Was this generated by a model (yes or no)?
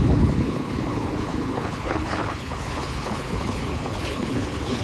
yes